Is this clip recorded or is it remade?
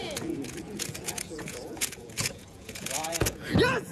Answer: remade